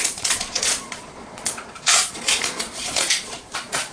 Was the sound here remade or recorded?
remade